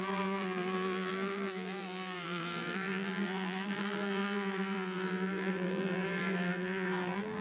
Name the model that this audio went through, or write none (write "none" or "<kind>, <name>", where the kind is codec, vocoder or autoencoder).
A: vocoder, BigVGAN v2